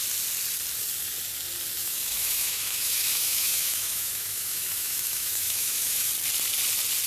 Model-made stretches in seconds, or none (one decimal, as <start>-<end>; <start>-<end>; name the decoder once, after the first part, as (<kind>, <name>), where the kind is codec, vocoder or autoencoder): 1.8-6.1 (autoencoder, DAC-VAE)

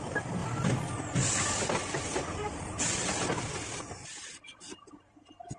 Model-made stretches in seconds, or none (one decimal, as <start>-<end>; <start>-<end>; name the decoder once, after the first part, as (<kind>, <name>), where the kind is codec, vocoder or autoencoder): 0.4-3.8 (vocoder, BigVGAN v2)

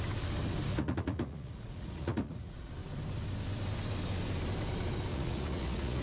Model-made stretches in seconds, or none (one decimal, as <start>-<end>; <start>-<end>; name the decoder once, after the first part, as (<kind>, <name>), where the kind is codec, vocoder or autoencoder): 0.7-2.7 (vocoder, Vocos); 5.1-6.0

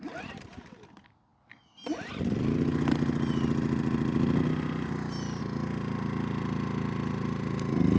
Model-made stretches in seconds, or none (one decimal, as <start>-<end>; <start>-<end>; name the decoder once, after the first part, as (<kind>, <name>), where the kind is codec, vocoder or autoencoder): none

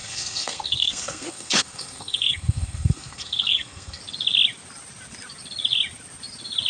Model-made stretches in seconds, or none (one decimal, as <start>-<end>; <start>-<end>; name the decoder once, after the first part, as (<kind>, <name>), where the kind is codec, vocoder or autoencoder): 0.0-4.0 (codec, SNAC)

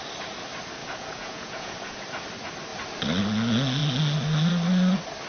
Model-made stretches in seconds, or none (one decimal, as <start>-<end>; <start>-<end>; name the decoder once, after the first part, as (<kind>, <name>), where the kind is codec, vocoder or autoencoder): 0.8-2.0 (vocoder, Vocos)

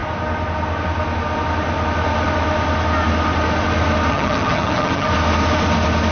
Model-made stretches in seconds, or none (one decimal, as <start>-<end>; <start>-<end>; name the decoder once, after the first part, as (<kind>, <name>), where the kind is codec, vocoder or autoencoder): 4.1-5.1 (vocoder, HiFi-GAN)

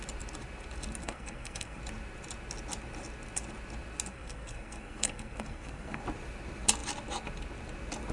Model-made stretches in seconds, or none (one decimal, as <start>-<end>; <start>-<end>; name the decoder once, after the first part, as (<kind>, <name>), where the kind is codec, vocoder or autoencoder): 1.0-1.8 (codec, SNAC); 4.1-6.0